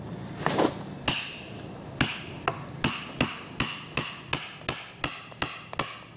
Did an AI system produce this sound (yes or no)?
no